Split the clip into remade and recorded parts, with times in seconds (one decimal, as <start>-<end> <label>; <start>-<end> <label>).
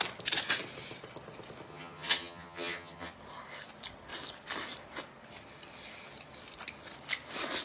0.0-1.7 recorded; 1.7-3.1 remade; 3.1-7.6 recorded